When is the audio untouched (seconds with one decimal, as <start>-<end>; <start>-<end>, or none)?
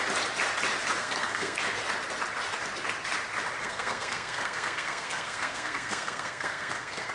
0.0-1.0; 1.6-3.6